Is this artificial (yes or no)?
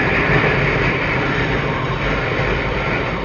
no